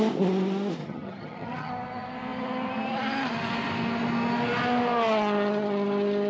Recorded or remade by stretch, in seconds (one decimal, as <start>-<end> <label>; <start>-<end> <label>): 0.0-0.8 recorded; 0.8-1.7 remade; 1.7-6.3 recorded